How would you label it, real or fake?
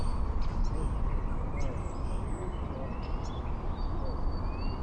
real